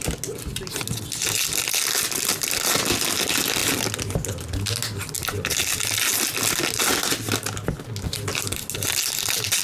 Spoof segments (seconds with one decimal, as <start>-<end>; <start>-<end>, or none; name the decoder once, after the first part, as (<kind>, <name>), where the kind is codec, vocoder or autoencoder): none